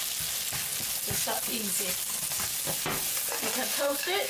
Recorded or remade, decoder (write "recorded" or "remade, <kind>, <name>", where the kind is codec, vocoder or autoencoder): recorded